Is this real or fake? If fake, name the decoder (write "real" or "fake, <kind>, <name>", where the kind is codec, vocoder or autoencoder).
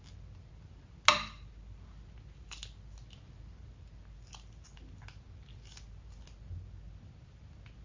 real